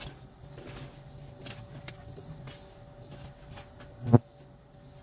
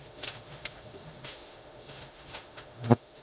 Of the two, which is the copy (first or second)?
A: second